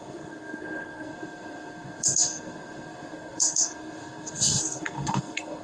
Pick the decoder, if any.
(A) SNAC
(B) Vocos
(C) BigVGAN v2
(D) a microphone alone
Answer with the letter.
A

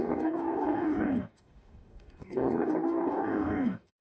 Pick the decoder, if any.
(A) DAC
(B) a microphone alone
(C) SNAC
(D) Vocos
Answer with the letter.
A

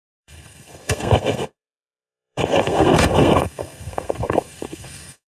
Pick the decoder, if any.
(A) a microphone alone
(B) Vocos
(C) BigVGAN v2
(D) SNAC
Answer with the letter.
D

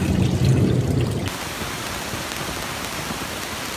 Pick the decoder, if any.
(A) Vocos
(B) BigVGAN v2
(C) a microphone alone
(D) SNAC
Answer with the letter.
C